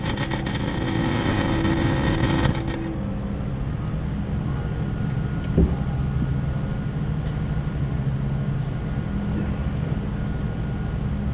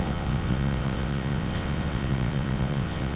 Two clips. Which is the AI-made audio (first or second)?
second